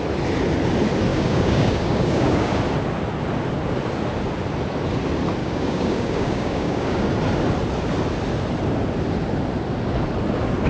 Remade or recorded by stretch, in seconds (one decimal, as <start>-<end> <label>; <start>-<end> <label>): 0.0-1.1 recorded; 1.1-2.6 remade; 2.6-5.4 recorded; 5.4-7.1 remade; 7.1-10.7 recorded